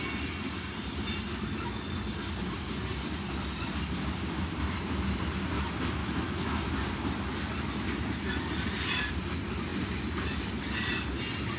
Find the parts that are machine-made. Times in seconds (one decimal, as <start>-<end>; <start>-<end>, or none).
6.0-6.7